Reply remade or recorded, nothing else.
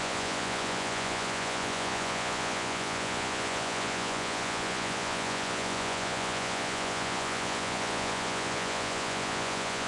remade